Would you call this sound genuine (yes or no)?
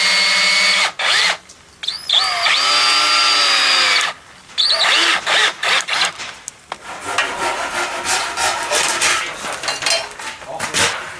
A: yes